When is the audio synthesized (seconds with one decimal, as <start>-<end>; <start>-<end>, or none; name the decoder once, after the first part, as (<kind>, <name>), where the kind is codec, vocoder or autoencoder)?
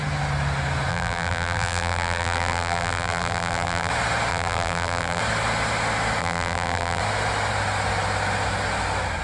0.9-3.9 (vocoder, BigVGAN v2); 4.3-5.2; 6.2-7.0